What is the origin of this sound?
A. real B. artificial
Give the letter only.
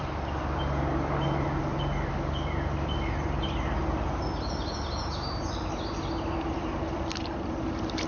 A